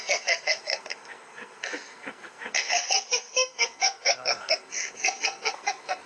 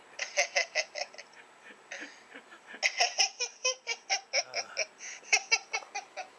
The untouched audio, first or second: second